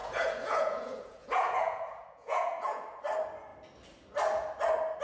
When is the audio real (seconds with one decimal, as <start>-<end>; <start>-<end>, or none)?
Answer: 3.0-5.0